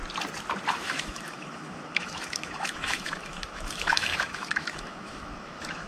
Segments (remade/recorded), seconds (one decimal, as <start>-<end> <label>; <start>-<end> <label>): 0.0-0.7 recorded; 0.7-5.9 remade